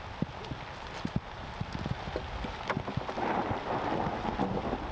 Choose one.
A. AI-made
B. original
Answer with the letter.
B